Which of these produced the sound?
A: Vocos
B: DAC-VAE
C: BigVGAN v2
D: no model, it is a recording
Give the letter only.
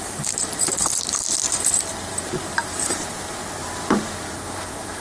C